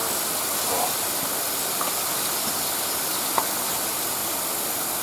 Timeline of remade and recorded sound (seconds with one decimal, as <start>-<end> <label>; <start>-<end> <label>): 0.0-5.0 recorded